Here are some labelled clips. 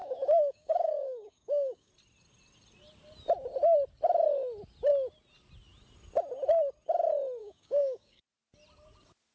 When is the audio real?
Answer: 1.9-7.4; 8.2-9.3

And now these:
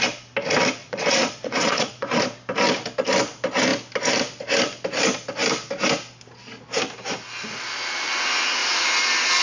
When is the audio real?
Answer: 0.0-0.8; 2.2-9.4

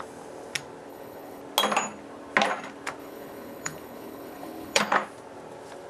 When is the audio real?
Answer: 0.0-0.9; 1.4-3.0; 4.8-5.9

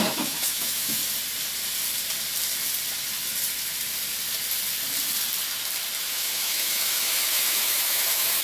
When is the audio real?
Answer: 1.0-6.0

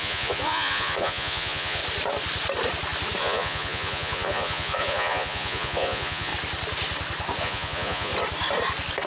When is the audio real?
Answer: 1.8-3.2; 6.3-7.4; 8.1-9.1

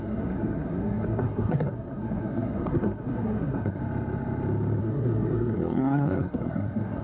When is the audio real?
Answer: 3.8-4.8

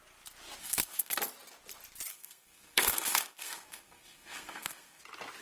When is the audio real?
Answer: 0.0-0.6; 1.2-2.1; 5.0-5.4